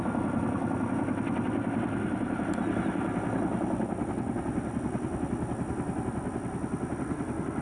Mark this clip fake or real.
real